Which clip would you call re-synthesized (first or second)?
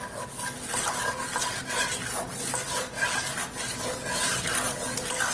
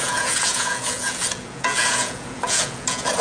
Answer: second